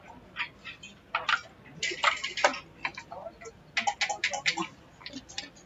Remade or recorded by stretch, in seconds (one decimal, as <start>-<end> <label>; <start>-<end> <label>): 0.0-5.7 recorded